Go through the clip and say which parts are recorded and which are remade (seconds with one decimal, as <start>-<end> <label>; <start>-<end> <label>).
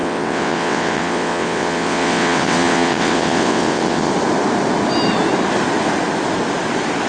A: 0.0-4.1 remade; 4.1-7.1 recorded